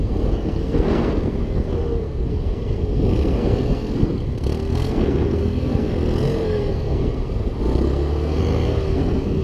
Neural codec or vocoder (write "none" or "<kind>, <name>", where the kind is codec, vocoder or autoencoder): codec, SNAC